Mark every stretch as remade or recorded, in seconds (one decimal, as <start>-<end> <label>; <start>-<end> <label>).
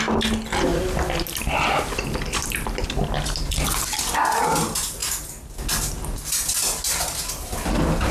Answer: 0.0-8.1 recorded